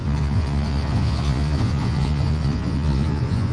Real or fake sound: fake